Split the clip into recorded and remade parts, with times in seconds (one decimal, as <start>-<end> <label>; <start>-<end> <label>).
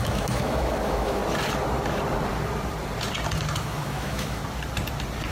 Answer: 0.0-1.2 remade; 1.2-3.6 recorded; 3.6-4.4 remade; 4.4-5.3 recorded